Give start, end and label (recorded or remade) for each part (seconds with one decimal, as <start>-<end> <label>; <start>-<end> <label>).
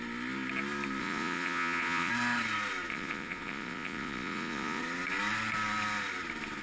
0.0-1.0 recorded; 1.0-2.1 remade; 2.1-2.9 recorded; 2.9-4.8 remade; 4.8-6.6 recorded